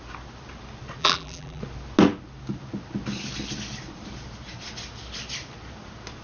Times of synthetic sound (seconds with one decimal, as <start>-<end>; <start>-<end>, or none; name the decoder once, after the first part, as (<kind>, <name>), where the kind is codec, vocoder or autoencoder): 1.0-1.6 (vocoder, BigVGAN v2)